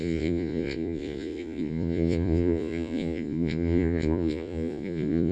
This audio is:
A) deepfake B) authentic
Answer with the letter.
A